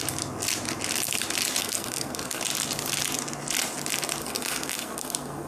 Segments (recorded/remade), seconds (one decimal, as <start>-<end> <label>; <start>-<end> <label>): 0.0-1.6 recorded; 1.6-2.4 remade; 2.4-4.2 recorded; 4.2-5.5 remade